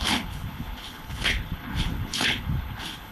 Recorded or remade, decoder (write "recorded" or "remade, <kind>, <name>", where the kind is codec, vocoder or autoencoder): remade, codec, HILCodec